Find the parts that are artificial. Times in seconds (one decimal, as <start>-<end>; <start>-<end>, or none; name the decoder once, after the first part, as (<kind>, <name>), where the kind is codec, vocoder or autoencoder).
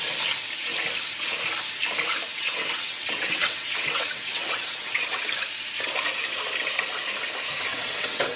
2.3-5.3 (vocoder, WaveNeXt); 7.7-8.4